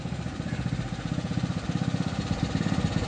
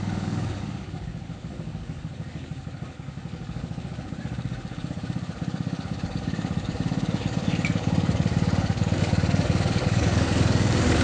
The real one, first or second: first